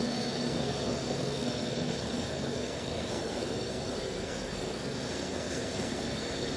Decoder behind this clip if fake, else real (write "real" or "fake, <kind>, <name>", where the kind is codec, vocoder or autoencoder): fake, codec, SNAC